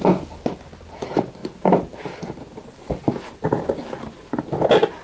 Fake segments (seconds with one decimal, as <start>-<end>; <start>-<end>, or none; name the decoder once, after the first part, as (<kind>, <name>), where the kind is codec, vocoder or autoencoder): none

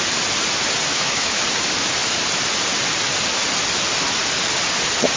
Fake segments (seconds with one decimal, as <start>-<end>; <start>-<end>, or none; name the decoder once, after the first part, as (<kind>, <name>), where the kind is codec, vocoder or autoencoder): 0.9-1.4 (autoencoder, DAC-VAE)

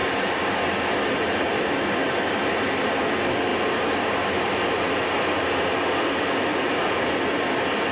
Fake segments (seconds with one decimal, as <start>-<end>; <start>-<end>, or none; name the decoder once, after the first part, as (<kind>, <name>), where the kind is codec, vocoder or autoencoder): 6.5-7.1 (vocoder, BigVGAN v2)

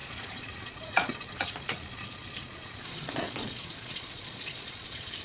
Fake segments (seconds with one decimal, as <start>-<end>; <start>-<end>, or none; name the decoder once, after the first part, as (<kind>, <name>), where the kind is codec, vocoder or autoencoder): 0.0-5.2 (vocoder, Vocos)

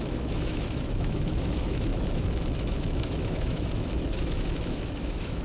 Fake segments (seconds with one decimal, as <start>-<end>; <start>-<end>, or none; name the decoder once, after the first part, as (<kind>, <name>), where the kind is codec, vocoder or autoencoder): 0.0-5.4 (autoencoder, DAC-VAE)

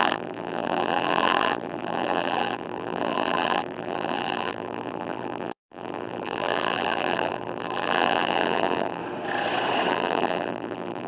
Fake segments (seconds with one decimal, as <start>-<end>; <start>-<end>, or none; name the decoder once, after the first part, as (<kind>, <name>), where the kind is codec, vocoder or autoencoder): 0.0-9.0 (vocoder, BigVGAN v2); 9.9-11.1

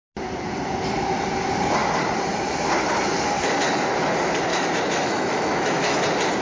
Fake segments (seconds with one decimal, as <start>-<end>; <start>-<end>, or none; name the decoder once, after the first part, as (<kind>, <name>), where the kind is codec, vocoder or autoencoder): 4.5-6.0 (autoencoder, DAC-VAE)